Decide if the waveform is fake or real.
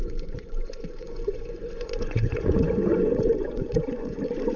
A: fake